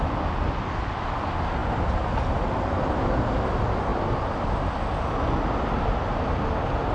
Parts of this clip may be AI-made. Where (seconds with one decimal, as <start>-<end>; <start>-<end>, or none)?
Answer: none